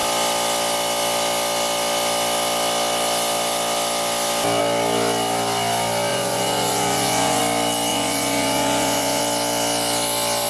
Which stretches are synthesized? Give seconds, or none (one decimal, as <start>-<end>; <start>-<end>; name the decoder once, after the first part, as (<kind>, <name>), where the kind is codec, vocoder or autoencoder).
6.1-7.4 (vocoder, Vocos); 7.9-9.2